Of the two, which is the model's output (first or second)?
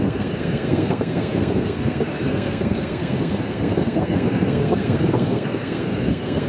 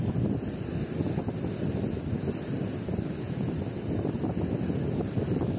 first